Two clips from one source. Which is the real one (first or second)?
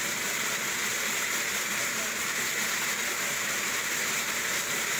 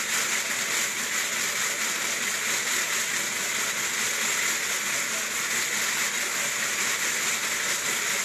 second